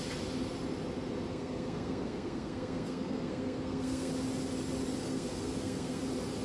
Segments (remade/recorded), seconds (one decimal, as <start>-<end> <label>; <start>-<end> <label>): 0.0-1.3 recorded; 1.3-4.1 remade; 4.1-5.0 recorded; 5.0-6.0 remade; 6.0-6.4 recorded